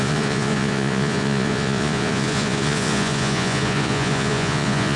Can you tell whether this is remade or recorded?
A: remade